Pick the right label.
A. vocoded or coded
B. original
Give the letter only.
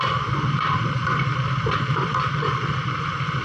A